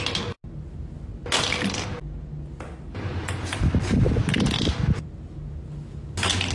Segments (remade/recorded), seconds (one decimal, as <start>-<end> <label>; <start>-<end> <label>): 0.0-6.5 recorded